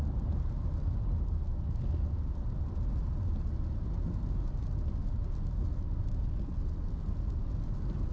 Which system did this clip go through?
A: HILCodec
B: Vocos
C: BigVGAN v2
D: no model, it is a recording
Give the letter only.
D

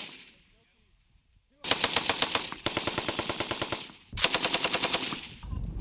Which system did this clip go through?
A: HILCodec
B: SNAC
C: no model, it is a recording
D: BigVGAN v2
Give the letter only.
D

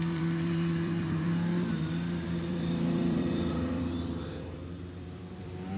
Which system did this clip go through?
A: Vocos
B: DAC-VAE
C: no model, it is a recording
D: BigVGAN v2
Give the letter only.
D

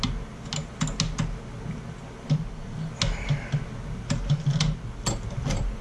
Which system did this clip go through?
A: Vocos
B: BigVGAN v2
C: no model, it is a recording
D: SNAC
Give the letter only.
C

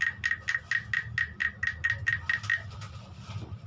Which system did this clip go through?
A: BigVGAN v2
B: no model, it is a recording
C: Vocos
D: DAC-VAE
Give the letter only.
B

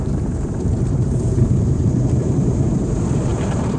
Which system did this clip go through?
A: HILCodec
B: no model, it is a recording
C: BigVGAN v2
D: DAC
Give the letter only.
C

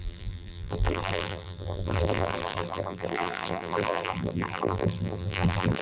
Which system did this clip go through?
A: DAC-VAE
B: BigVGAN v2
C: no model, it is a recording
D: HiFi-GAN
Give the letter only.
B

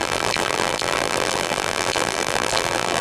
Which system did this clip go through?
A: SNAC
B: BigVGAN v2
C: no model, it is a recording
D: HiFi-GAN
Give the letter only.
B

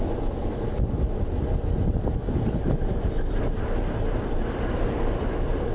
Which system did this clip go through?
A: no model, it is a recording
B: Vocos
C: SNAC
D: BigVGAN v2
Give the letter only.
D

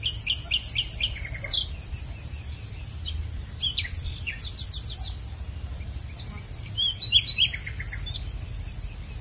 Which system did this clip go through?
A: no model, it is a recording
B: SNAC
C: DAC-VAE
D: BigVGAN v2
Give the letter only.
A